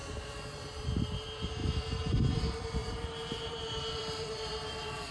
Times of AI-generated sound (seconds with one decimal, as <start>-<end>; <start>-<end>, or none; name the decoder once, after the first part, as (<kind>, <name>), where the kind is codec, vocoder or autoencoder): 0.0-5.1 (vocoder, BigVGAN v2)